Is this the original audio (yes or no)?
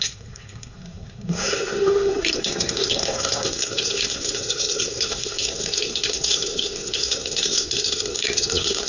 no